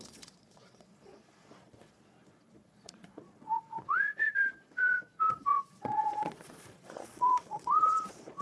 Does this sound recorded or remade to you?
remade